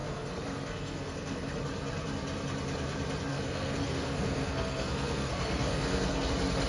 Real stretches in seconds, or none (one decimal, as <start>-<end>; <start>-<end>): 1.6-3.3; 6.3-6.7

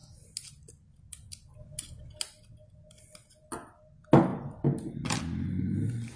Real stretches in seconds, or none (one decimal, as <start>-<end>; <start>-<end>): 0.0-6.2

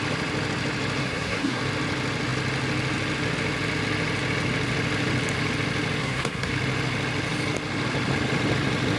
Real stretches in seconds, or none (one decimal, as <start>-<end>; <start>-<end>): 0.0-1.0; 1.6-6.0; 6.5-9.0

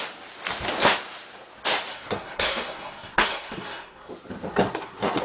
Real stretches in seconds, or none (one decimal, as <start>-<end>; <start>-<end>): 0.0-1.9; 4.1-4.5

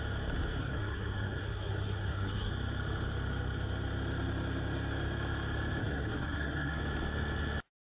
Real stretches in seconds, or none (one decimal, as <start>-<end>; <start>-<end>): 0.0-0.6; 2.5-5.8; 6.8-7.9

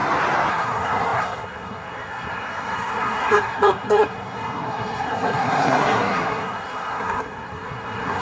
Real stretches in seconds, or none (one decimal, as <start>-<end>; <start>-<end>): 0.0-0.5

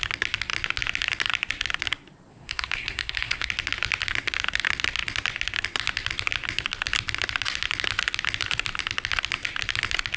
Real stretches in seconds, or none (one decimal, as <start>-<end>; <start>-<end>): 0.0-2.3; 3.5-10.2